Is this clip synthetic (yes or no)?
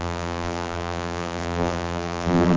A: yes